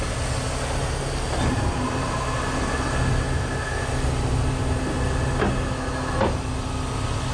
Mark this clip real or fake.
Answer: real